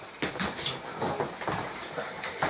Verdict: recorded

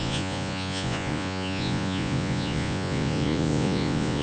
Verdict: remade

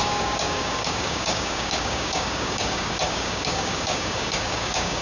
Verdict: remade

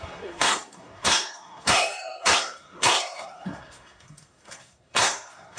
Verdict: remade